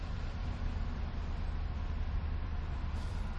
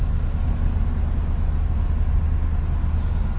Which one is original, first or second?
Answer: second